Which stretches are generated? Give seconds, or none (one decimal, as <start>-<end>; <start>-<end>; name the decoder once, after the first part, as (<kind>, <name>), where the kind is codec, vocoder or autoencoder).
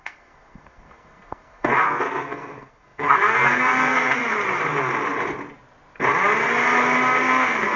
0.0-4.2 (codec, SNAC); 7.2-7.8